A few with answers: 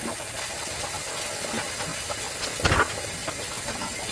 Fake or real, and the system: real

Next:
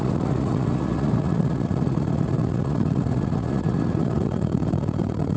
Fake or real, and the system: fake, vocoder, Vocos